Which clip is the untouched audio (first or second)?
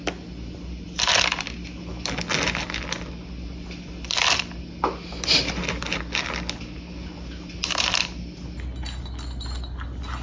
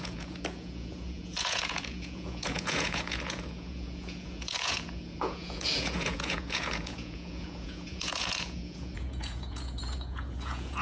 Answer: first